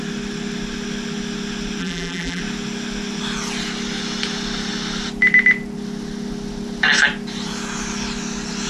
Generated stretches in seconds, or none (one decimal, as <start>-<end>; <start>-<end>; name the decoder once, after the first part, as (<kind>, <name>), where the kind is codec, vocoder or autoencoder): 1.8-2.4 (vocoder, BigVGAN v2)